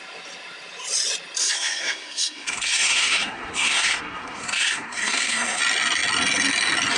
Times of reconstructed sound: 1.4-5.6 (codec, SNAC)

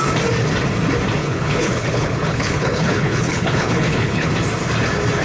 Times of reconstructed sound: 1.2-4.3 (codec, HILCodec)

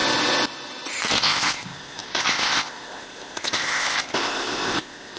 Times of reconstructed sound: 1.1-5.2 (codec, ZipCodec)

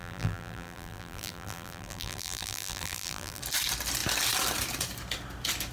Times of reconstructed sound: 0.0-3.4 (vocoder, BigVGAN v2)